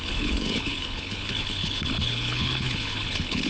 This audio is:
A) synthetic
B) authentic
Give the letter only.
A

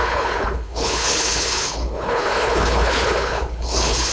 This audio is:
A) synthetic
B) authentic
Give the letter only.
A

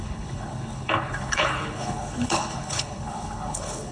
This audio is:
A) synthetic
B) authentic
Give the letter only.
A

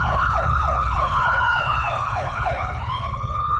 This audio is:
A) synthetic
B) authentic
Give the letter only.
A